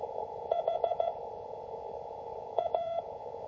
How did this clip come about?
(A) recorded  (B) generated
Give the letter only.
B